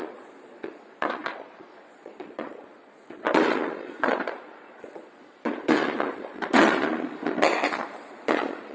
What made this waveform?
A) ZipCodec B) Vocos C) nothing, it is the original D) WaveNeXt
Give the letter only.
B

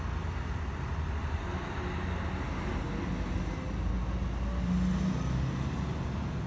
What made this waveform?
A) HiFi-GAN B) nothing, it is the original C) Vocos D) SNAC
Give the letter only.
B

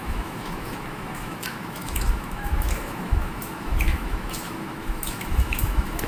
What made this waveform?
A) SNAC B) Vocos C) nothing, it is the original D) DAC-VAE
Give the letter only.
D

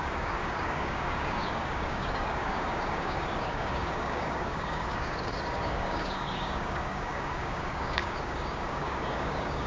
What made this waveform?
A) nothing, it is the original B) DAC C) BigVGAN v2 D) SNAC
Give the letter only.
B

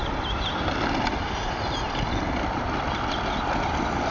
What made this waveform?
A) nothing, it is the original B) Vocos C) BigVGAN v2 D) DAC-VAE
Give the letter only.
A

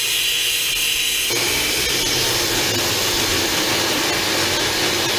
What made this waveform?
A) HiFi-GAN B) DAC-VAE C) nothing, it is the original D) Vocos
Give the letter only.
C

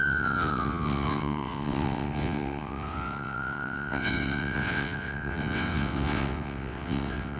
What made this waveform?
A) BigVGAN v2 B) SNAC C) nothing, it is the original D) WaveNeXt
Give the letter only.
D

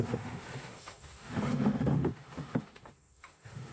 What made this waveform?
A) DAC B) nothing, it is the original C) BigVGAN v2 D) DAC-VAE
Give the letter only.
D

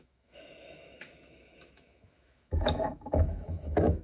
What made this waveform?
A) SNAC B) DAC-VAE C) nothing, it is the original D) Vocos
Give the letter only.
B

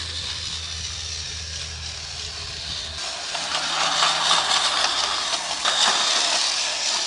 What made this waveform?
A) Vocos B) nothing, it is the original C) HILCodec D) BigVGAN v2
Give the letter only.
B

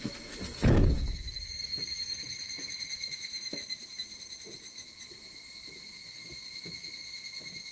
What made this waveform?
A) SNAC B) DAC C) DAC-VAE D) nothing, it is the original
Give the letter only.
C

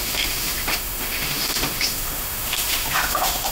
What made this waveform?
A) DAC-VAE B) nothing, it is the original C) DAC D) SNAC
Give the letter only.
A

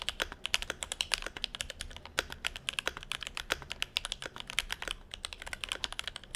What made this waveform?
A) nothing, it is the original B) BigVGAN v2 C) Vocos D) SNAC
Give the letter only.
A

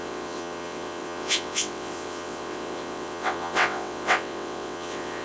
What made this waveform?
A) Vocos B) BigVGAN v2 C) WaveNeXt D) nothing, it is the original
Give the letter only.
C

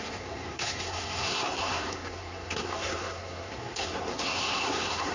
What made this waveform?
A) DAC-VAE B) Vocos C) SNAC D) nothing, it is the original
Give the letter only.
C